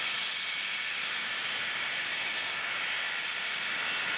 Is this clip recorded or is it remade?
recorded